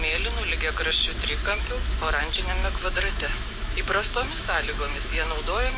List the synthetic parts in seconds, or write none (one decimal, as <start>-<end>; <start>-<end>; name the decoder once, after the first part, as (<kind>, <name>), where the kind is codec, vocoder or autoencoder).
1.4-2.2 (autoencoder, DAC-VAE); 2.6-5.8